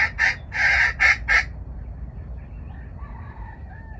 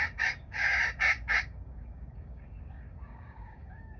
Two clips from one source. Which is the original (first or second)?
first